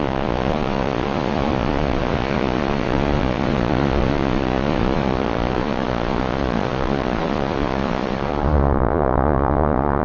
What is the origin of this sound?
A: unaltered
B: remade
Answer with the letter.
B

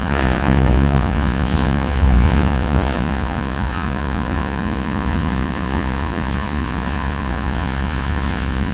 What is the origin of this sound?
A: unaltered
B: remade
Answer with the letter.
B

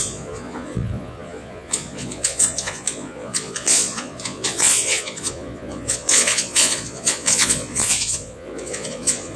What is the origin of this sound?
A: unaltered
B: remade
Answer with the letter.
B